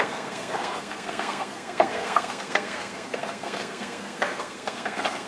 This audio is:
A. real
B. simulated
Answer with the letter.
B